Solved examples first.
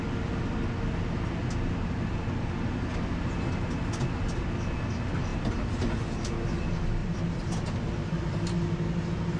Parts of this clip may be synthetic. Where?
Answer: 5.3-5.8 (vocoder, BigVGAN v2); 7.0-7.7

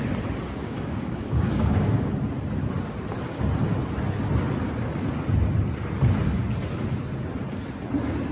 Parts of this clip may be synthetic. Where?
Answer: 0.6-2.1 (codec, DAC)

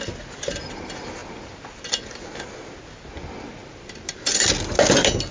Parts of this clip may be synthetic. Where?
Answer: none

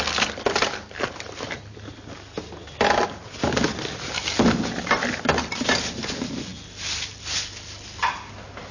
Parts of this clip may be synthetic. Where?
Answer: none

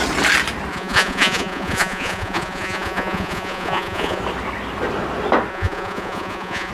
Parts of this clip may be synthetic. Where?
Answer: 0.7-4.2 (vocoder, Vocos); 5.5-6.7

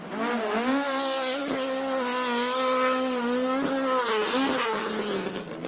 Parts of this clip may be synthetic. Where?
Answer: none

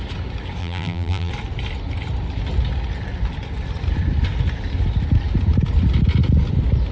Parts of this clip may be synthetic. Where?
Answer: 0.6-1.3 (vocoder, BigVGAN v2)

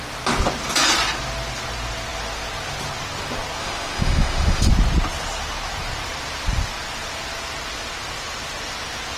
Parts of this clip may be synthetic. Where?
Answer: 3.6-4.7 (autoencoder, DAC-VAE)